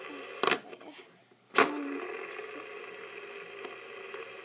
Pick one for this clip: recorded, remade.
recorded